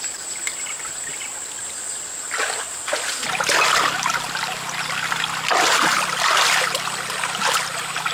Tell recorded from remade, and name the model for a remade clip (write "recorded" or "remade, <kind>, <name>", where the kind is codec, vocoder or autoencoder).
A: recorded